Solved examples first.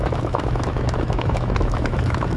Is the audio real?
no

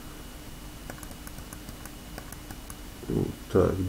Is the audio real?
yes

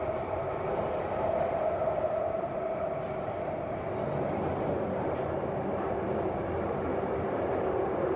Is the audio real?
yes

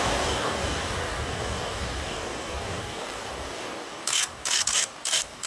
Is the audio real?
no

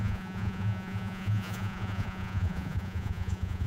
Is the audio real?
no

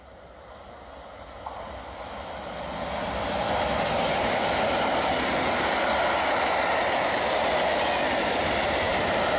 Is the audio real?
yes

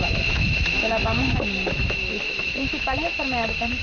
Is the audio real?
no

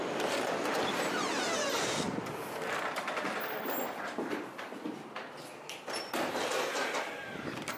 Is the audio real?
yes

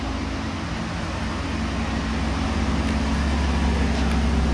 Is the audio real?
yes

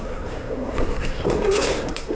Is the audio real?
no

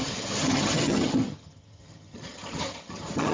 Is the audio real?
no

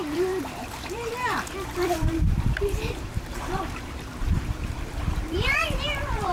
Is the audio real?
no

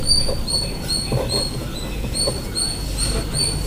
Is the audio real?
yes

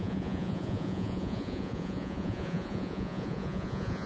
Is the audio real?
no